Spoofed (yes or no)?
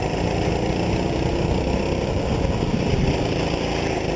no